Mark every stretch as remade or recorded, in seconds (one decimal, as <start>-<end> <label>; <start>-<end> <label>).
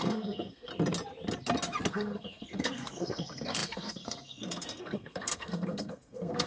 0.0-0.7 remade; 0.7-1.9 recorded; 1.9-6.5 remade